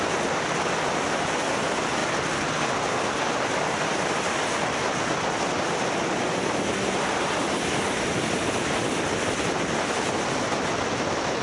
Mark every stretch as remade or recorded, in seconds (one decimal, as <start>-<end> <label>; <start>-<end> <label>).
0.0-11.4 recorded

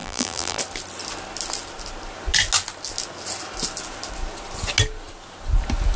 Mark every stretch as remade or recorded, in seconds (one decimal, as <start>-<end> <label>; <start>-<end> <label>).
0.0-0.6 remade; 0.6-6.0 recorded

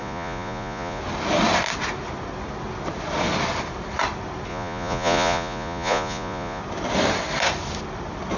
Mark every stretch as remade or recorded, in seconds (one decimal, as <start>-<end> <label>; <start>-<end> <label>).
0.0-1.0 remade; 1.0-4.5 recorded; 4.5-6.6 remade; 6.6-8.4 recorded

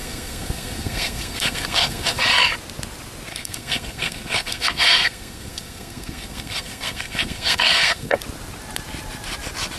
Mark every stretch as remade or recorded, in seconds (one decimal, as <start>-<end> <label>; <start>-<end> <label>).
0.0-2.2 remade; 2.2-3.3 recorded; 3.3-8.2 remade; 8.2-9.8 recorded

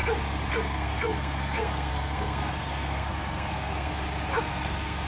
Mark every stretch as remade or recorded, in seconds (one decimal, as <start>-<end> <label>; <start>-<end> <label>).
0.0-0.5 recorded; 0.5-3.9 remade; 3.9-4.4 recorded; 4.4-5.1 remade

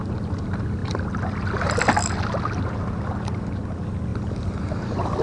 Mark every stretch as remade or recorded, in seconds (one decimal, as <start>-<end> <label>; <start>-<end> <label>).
0.0-5.2 recorded

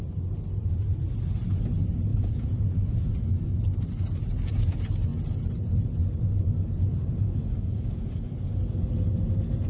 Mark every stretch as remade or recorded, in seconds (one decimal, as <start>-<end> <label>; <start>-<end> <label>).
0.0-2.1 recorded; 2.1-3.3 remade; 3.3-6.9 recorded; 6.9-8.3 remade; 8.3-9.7 recorded